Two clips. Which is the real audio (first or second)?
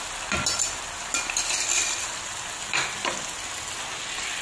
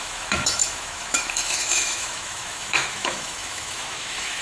first